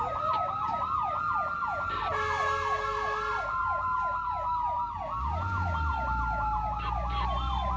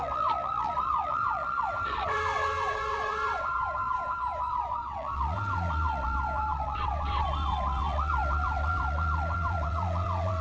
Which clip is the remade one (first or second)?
second